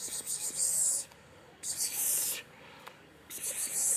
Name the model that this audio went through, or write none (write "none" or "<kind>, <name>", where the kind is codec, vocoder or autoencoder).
codec, DAC